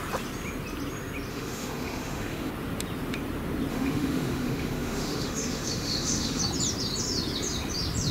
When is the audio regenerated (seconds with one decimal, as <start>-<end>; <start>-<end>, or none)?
1.3-2.5; 3.7-6.4